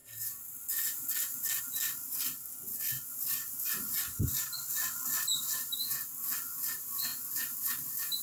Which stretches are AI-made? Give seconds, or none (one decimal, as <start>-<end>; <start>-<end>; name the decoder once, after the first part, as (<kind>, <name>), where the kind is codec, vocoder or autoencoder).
none